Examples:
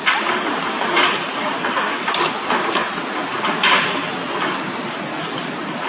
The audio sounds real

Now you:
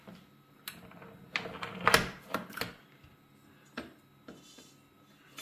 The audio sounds real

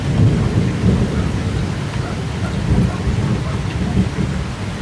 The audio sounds real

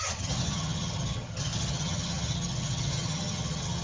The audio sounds fake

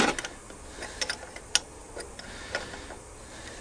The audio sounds real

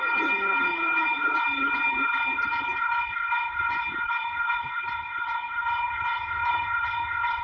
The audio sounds fake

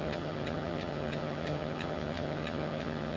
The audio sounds fake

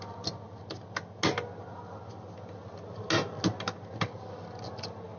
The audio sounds real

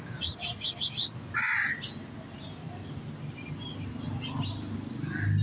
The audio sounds real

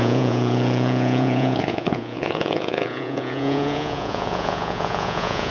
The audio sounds fake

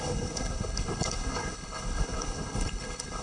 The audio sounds fake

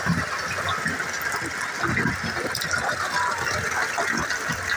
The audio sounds real